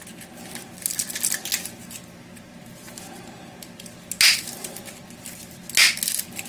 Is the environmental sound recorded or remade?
recorded